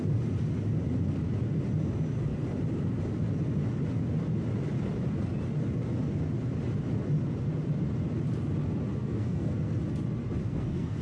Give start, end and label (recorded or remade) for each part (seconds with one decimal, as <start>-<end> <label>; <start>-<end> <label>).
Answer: 0.0-9.0 recorded; 9.0-9.8 remade; 9.8-10.4 recorded; 10.4-11.0 remade